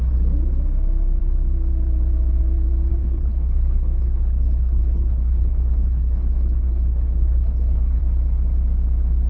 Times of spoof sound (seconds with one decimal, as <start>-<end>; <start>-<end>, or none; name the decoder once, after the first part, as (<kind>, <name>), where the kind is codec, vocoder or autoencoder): 2.9-8.0 (codec, HILCodec)